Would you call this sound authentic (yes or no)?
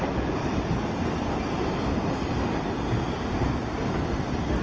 yes